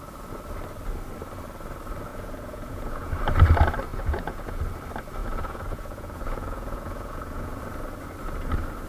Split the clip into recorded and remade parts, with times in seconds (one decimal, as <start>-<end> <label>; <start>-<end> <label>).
0.0-2.1 recorded; 2.1-3.1 remade; 3.1-3.9 recorded; 3.9-4.6 remade; 4.6-5.2 recorded; 5.2-7.6 remade; 7.6-8.9 recorded